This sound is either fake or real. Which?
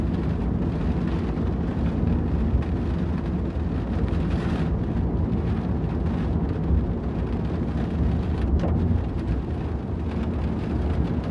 real